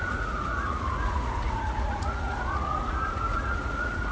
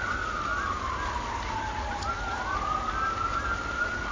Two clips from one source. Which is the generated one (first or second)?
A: first